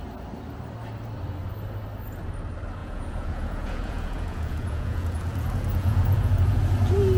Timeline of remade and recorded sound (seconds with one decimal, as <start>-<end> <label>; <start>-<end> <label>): 0.0-2.8 recorded; 2.8-6.6 remade; 6.6-7.2 recorded